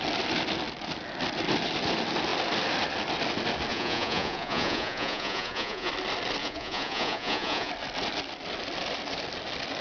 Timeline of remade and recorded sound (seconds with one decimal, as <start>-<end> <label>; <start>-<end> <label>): 0.0-3.7 recorded; 3.7-5.9 remade; 5.9-6.4 recorded; 6.4-7.7 remade; 7.7-9.8 recorded